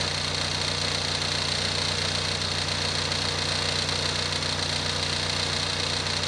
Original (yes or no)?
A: yes